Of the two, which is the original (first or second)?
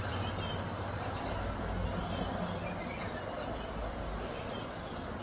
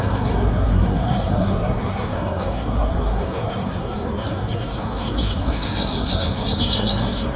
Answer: first